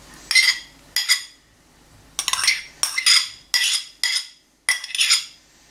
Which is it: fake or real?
real